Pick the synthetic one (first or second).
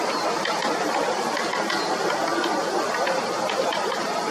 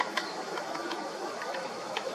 second